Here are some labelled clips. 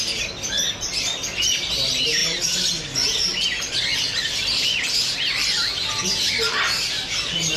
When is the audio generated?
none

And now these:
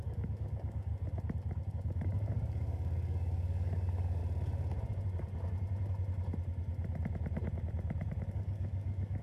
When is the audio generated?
0.0-0.9 (codec, DAC); 1.7-4.2; 8.3-9.2

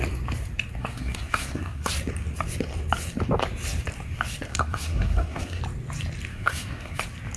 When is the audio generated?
0.8-1.9 (codec, SNAC); 4.5-5.6; 6.3-7.0

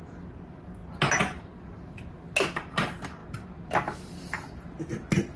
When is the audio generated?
none

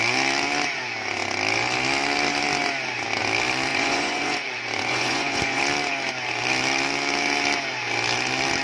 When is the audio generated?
3.7-5.6 (vocoder, Vocos)

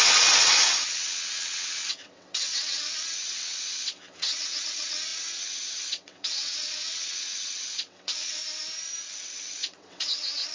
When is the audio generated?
0.0-8.4 (vocoder, WaveNeXt); 9.1-10.5

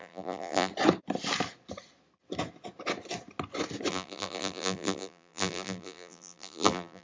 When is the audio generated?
0.0-0.7 (vocoder, BigVGAN v2); 3.9-7.0